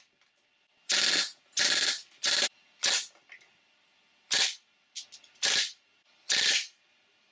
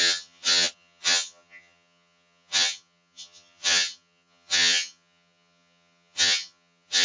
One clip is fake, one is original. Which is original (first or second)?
first